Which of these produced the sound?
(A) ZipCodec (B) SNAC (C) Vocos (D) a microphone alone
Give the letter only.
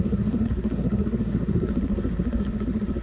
B